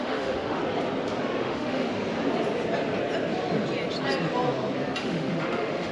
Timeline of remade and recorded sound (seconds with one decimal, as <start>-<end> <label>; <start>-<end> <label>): 0.0-0.6 remade; 0.6-1.4 recorded; 1.4-1.9 remade; 1.9-5.0 recorded; 5.0-5.9 remade